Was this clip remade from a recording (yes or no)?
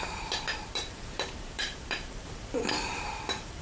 yes